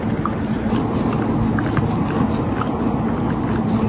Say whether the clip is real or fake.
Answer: real